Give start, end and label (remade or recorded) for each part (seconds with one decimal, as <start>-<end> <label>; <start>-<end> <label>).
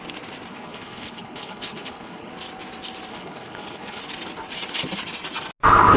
0.0-0.5 recorded; 0.5-2.3 remade; 2.3-3.1 recorded; 3.1-4.0 remade; 4.0-6.0 recorded